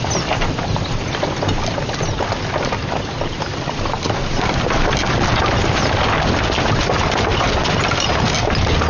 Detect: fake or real real